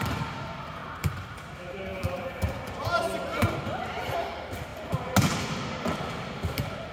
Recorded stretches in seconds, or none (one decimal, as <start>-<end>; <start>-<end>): 0.0-0.8; 1.5-1.9; 3.5-6.9